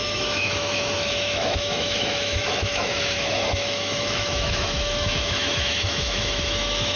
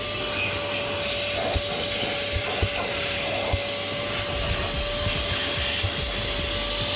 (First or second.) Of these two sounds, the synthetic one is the first